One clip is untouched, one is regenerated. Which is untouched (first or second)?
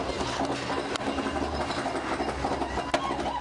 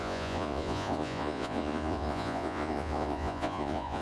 first